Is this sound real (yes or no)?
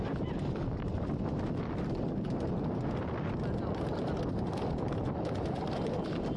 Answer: yes